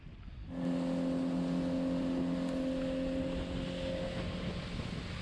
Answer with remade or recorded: recorded